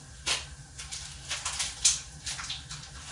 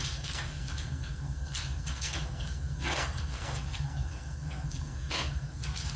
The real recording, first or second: first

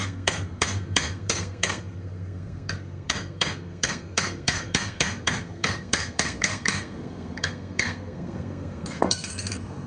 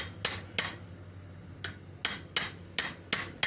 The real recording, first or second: second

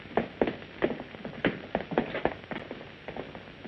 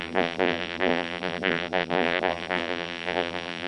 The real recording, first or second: first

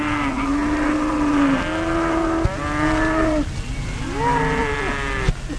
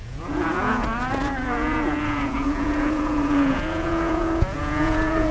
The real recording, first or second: first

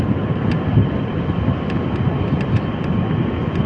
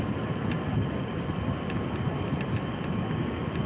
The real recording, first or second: second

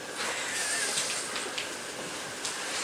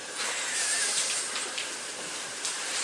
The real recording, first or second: first